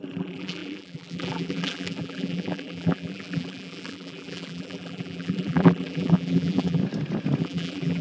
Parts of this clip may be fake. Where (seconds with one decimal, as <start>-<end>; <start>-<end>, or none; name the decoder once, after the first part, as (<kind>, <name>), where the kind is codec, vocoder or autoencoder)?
0.0-6.8 (vocoder, BigVGAN v2); 7.4-8.0